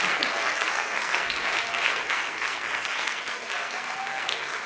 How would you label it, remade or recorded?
remade